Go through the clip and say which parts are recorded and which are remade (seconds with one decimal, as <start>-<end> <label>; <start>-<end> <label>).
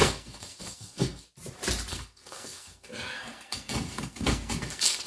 0.0-1.3 remade; 1.3-1.9 recorded; 1.9-5.1 remade